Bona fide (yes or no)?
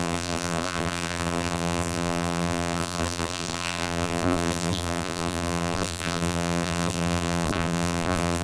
no